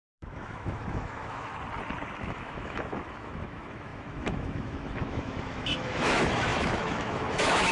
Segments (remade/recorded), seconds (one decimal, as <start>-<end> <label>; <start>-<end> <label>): 0.0-1.5 remade; 1.5-2.2 recorded; 2.2-7.7 remade